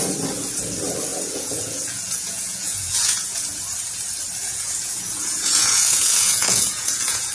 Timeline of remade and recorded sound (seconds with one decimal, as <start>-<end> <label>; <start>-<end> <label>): 0.0-1.1 recorded; 1.1-3.6 remade; 3.6-4.4 recorded; 4.4-7.3 remade